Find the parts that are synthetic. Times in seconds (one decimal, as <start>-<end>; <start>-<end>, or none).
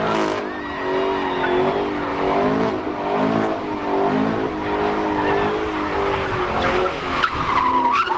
2.1-2.7; 6.8-7.4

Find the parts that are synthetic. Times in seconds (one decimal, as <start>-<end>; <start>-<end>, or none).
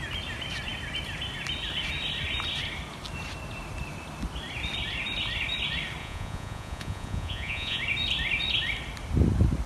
6.0-7.8